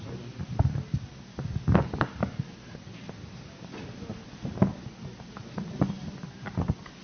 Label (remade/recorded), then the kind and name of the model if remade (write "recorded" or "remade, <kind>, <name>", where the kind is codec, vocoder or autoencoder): recorded